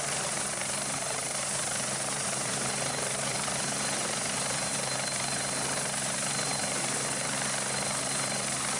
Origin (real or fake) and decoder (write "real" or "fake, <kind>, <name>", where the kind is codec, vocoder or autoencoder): fake, vocoder, BigVGAN v2